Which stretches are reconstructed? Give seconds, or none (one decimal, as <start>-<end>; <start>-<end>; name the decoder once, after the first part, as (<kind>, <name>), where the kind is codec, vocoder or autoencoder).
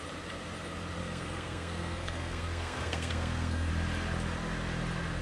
1.0-3.7 (codec, SNAC)